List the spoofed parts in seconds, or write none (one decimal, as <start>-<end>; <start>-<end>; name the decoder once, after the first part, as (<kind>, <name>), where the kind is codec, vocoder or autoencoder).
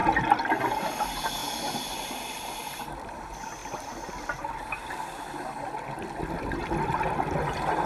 none